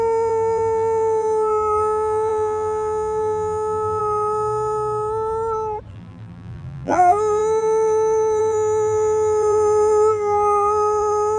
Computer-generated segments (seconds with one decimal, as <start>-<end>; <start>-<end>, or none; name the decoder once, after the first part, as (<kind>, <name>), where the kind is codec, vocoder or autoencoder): 0.0-4.0 (vocoder, BigVGAN v2); 5.9-11.4